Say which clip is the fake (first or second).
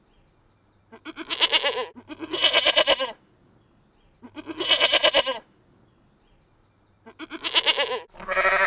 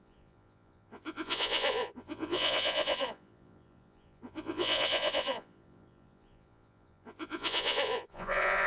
second